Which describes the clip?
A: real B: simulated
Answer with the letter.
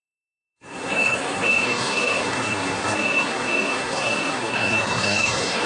B